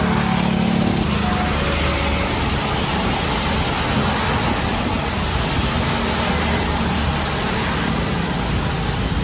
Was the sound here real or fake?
real